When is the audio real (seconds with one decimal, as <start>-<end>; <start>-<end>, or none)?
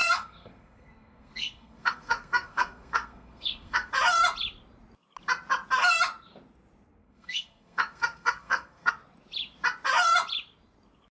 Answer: 3.9-7.0; 8.9-11.1